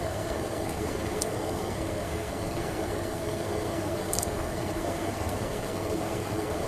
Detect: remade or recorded remade